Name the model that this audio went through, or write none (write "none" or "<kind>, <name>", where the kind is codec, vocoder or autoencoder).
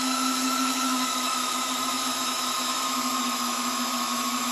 autoencoder, DAC-VAE